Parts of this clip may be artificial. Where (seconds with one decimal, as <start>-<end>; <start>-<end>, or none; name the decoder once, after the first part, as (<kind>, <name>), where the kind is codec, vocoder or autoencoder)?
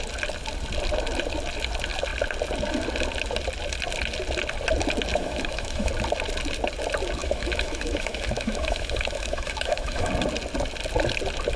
5.1-5.9 (autoencoder, DAC-VAE); 7.2-10.1